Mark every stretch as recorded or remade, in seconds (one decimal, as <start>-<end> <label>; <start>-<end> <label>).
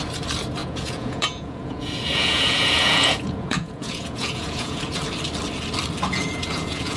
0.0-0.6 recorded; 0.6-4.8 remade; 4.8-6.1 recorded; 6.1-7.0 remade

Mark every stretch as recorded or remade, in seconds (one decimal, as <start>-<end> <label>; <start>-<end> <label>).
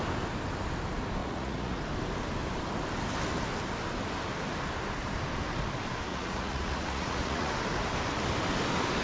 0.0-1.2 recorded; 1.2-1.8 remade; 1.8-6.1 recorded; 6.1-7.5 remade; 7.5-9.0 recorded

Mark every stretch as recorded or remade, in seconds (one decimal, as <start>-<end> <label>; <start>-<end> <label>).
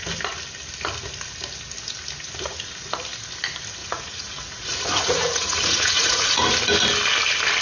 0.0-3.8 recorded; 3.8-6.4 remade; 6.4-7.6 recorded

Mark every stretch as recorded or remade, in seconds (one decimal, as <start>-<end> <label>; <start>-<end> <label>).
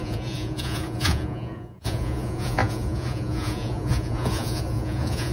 0.0-5.3 remade